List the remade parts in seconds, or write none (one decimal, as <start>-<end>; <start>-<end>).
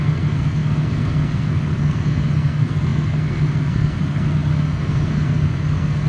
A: 0.0-6.1